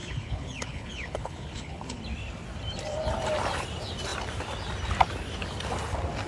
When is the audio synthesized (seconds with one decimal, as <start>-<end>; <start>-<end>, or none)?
0.0-2.0